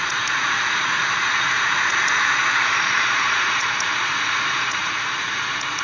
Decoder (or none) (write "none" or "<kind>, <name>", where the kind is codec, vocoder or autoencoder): vocoder, Vocos